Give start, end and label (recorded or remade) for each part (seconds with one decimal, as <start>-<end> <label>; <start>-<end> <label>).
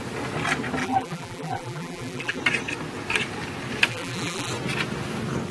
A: 0.0-0.8 recorded; 0.8-2.4 remade; 2.4-3.9 recorded; 3.9-4.5 remade; 4.5-5.5 recorded